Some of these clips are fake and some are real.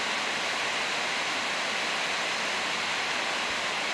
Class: real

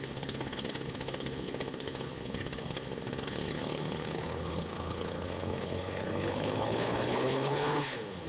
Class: fake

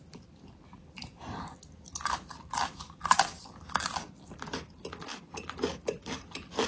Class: real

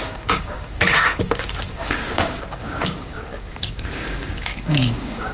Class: fake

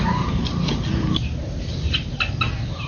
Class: real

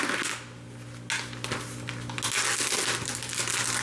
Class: real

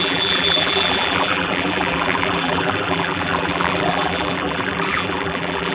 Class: fake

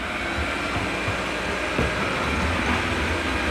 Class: real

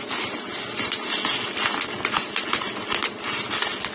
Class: real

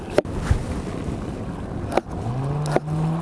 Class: real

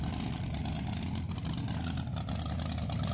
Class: real